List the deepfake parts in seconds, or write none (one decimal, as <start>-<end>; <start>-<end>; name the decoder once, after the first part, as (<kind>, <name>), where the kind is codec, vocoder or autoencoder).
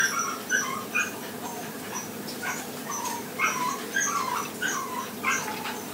0.0-0.6 (vocoder, BigVGAN v2); 1.5-3.8